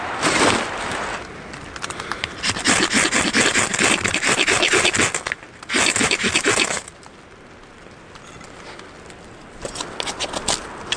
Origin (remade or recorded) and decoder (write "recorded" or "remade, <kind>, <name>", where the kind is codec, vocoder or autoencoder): recorded